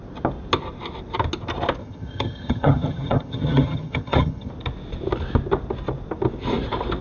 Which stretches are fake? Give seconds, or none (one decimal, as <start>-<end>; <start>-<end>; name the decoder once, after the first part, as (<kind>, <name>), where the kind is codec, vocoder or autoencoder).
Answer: 1.8-4.5 (vocoder, HiFi-GAN)